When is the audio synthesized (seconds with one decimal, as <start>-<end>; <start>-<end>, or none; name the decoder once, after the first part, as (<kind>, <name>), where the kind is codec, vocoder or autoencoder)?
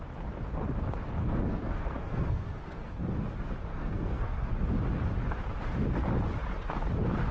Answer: 1.2-2.9 (codec, SNAC); 3.7-4.5